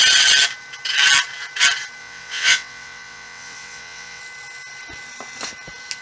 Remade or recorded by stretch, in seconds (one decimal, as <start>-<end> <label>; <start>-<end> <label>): 0.0-2.0 recorded; 2.0-4.2 remade; 4.2-6.0 recorded